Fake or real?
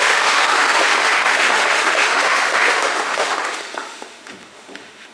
fake